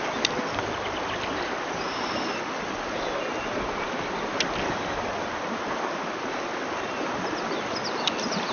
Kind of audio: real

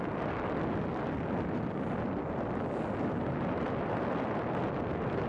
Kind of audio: real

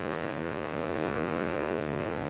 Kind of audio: fake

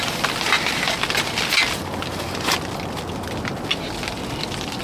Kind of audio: real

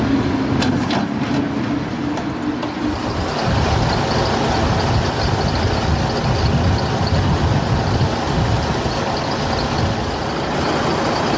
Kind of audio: real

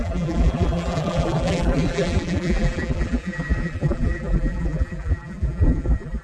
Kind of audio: fake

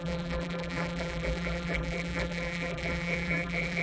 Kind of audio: fake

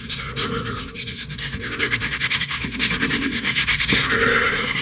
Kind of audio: fake